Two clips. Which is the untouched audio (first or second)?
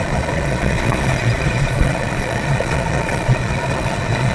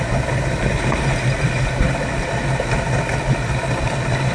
second